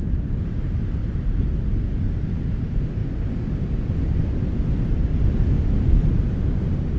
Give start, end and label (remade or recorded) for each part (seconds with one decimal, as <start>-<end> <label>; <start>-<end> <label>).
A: 0.0-1.0 remade; 1.0-2.1 recorded; 2.1-3.0 remade; 3.0-3.7 recorded; 3.7-5.1 remade; 5.1-6.6 recorded; 6.6-7.0 remade